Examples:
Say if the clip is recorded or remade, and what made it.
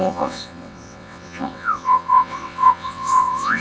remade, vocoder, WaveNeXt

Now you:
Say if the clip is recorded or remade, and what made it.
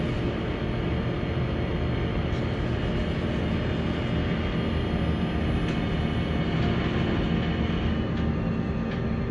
recorded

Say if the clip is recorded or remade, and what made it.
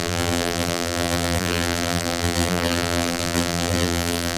remade, vocoder, BigVGAN v2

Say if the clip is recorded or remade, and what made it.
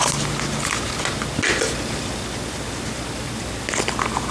recorded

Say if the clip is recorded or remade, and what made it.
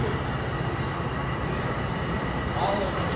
recorded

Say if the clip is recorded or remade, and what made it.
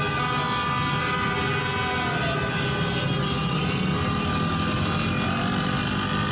recorded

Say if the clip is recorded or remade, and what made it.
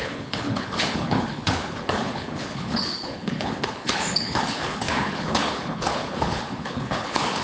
remade, codec, HILCodec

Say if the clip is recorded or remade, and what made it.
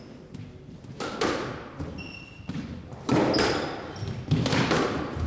recorded